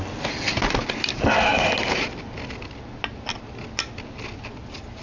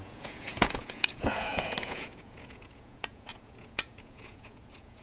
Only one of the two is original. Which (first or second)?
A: first